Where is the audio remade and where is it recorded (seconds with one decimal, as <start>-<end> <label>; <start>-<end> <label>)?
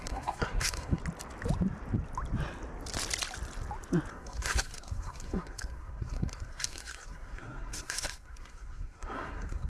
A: 0.0-1.0 remade; 1.0-4.1 recorded; 4.1-9.7 remade